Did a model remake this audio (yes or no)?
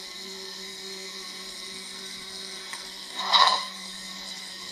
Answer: yes